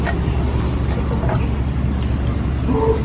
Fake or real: real